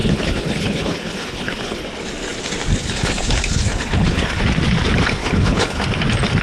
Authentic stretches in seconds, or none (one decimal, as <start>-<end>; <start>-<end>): 1.8-2.8; 4.4-5.2; 5.8-6.4